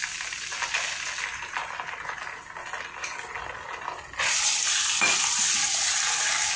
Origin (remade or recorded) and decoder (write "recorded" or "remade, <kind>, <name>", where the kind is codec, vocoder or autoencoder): recorded